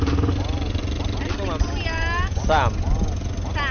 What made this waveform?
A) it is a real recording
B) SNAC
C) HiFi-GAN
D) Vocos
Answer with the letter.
A